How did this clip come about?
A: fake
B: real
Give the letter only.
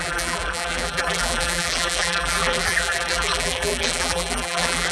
A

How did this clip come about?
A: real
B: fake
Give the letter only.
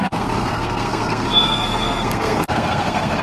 B